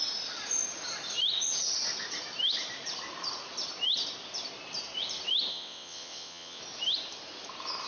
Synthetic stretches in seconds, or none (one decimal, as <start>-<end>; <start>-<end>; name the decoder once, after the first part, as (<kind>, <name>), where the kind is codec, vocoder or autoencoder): 5.5-6.6 (vocoder, WaveNeXt)